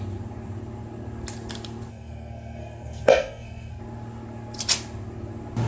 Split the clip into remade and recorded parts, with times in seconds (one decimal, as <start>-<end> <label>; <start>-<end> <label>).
0.0-1.9 recorded; 1.9-3.8 remade; 3.8-5.7 recorded